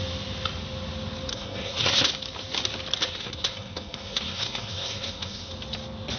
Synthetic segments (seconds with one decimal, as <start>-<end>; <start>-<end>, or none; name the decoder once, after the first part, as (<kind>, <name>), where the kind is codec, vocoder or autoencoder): 1.3-2.1 (codec, SNAC); 3.0-5.5